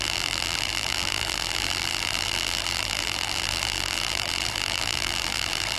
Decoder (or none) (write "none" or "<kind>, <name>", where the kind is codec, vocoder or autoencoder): vocoder, BigVGAN v2